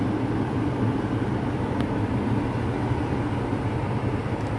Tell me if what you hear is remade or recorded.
recorded